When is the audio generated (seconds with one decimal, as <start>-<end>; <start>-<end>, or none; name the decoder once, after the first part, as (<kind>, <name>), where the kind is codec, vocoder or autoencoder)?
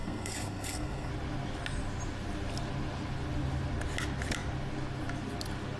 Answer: 0.0-1.1 (codec, SNAC)